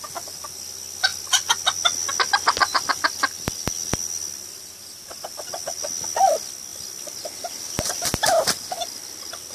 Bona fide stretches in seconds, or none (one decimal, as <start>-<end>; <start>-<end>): 0.0-9.5

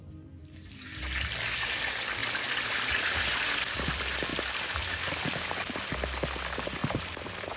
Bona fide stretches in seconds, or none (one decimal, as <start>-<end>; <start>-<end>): 6.8-7.6

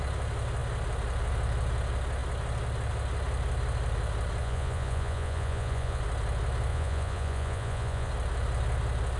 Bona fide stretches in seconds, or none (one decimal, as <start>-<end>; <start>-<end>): 0.0-4.4; 6.0-6.7; 8.1-9.2

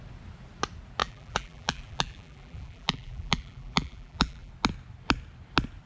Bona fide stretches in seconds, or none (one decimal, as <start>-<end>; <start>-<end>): 0.0-1.0; 4.5-5.9

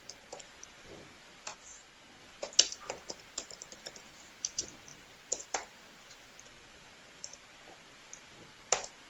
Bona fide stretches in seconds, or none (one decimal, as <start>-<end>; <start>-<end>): 0.0-9.1

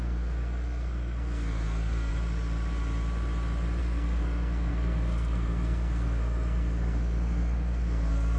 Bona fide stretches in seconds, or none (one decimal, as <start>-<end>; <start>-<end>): 2.1-3.8

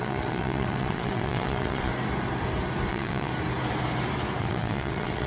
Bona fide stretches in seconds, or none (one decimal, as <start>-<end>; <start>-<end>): 1.9-2.9; 3.3-4.4

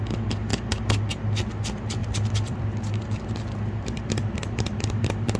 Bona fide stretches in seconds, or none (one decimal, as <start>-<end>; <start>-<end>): 0.0-0.5; 1.1-2.0